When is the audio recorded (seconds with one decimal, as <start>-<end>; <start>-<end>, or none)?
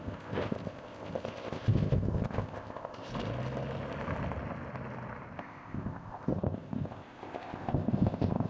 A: 3.1-5.4